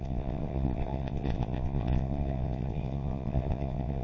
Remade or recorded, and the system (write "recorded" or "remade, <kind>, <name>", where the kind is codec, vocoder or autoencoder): remade, vocoder, WaveNeXt